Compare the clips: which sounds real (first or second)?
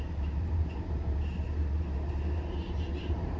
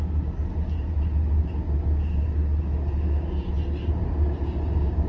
second